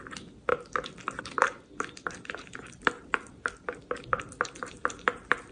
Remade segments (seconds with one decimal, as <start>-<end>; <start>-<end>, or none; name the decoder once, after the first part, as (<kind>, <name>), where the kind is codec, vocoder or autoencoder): none